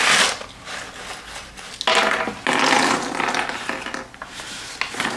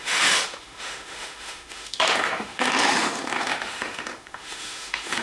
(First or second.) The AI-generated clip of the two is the second